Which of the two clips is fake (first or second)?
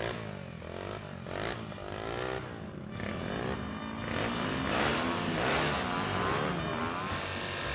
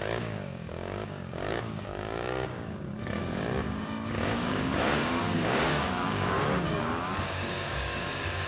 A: second